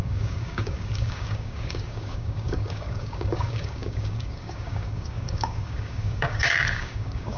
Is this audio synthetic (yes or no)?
yes